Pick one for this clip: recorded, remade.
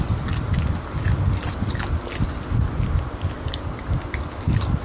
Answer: recorded